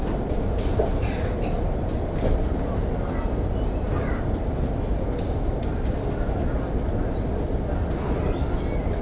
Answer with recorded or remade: recorded